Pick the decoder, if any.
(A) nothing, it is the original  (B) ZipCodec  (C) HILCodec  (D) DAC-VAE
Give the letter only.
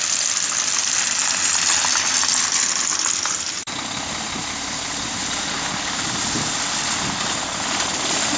A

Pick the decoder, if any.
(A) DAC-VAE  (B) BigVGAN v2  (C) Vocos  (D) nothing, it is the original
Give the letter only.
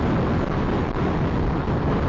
D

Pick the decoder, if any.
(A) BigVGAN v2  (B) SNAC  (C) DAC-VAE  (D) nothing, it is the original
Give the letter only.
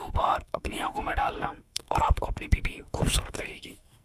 B